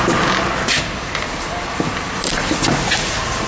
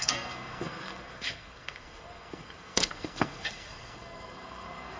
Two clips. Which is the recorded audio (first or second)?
first